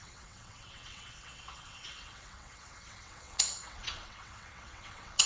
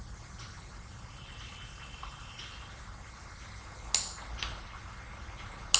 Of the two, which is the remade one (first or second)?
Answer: first